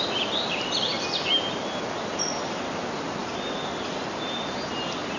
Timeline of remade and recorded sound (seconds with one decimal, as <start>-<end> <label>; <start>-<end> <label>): 0.0-5.2 recorded